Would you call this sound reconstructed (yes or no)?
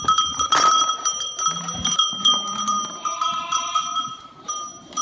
yes